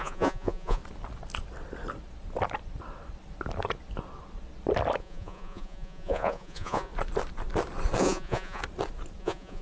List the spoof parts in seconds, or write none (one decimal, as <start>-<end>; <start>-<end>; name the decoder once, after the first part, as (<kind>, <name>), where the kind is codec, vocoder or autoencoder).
0.0-0.8 (vocoder, Vocos); 5.0-6.9; 8.0-8.6; 9.2-9.6

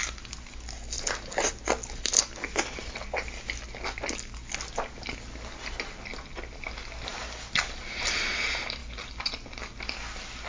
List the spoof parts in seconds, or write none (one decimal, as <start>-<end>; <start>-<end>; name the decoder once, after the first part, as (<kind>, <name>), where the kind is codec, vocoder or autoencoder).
none

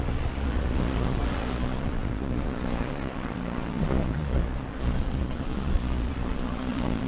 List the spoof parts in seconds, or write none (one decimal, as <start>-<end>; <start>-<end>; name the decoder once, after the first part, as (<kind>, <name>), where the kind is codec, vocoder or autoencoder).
0.0-7.1 (vocoder, Vocos)

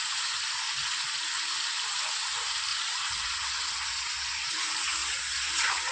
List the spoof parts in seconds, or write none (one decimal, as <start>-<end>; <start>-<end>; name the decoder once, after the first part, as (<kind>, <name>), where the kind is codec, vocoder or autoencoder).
2.7-4.5 (vocoder, Vocos); 5.0-5.9